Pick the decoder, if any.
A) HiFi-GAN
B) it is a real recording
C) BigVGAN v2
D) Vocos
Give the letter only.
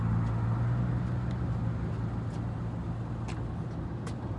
B